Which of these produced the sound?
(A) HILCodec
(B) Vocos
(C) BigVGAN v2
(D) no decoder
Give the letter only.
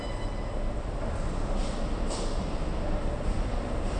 D